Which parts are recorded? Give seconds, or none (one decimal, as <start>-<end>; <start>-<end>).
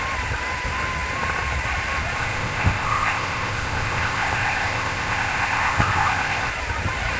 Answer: 0.0-2.2; 6.5-7.2